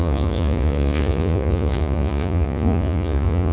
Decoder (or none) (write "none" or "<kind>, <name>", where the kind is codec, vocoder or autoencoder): vocoder, Vocos